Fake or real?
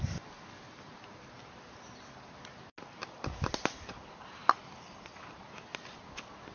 real